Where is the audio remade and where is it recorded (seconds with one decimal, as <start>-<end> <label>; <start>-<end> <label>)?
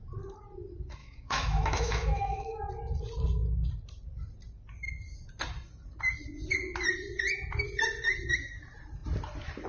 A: 0.0-1.0 recorded; 1.0-2.7 remade; 2.7-9.7 recorded